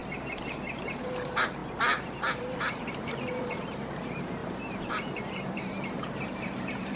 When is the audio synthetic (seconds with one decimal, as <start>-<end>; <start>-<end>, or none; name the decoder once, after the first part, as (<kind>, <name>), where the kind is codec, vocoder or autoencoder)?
1.0-1.6 (vocoder, BigVGAN v2); 2.4-7.0